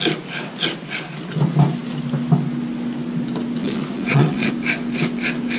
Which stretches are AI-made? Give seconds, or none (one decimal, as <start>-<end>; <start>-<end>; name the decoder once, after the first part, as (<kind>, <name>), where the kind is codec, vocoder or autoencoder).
3.6-4.5 (vocoder, Vocos)